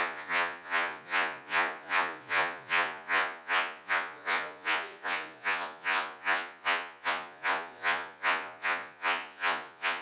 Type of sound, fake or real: fake